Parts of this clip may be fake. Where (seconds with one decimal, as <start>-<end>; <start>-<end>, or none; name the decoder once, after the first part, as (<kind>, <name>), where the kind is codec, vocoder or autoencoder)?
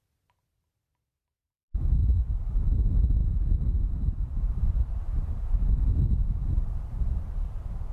3.2-5.8 (vocoder, BigVGAN v2)